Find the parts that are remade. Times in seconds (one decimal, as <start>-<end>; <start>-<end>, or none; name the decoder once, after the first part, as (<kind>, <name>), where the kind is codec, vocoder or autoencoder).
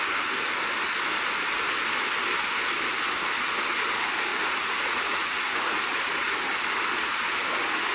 4.3-6.1 (vocoder, Vocos)